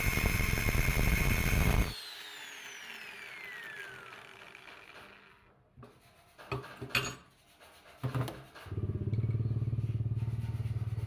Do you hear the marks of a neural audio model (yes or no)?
no